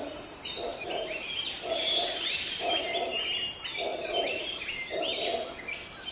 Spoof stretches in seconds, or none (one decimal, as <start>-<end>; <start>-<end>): 0.0-3.5; 3.9-5.0